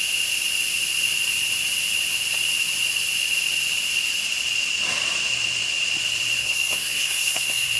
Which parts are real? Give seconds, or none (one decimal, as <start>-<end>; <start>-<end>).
0.0-6.4